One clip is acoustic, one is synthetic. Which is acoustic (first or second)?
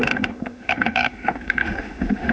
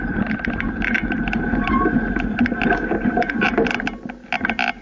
second